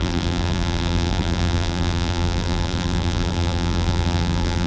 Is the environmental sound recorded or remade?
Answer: remade